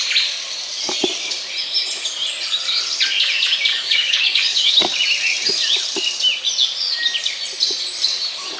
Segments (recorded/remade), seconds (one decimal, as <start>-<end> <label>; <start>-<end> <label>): 0.0-3.7 recorded; 3.7-4.7 remade; 4.7-8.6 recorded